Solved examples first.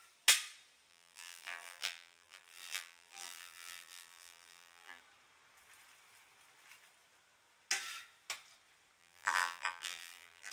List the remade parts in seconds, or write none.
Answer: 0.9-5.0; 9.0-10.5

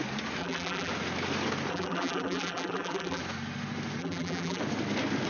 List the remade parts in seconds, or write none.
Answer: 0.4-0.9; 1.7-3.2; 4.0-4.6

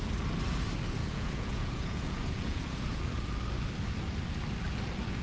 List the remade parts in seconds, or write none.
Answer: 1.0-3.0